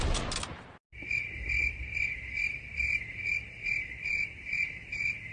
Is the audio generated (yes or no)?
no